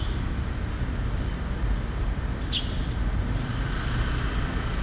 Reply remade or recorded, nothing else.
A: recorded